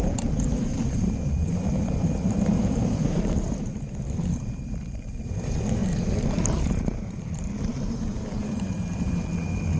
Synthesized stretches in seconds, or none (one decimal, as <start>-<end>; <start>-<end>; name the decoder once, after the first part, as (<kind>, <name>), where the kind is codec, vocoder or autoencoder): 0.0-5.8 (vocoder, BigVGAN v2); 6.6-9.8